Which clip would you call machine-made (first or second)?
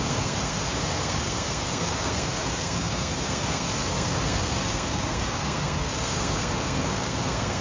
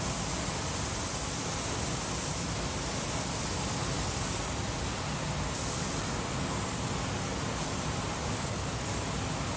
first